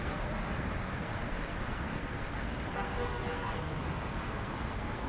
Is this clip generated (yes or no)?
yes